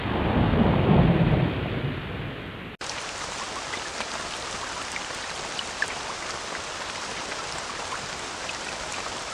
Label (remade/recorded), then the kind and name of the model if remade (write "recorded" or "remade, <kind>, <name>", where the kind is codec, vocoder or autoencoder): recorded